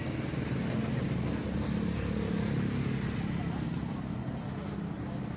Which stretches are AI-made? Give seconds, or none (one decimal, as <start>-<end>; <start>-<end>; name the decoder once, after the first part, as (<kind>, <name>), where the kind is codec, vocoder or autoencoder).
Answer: none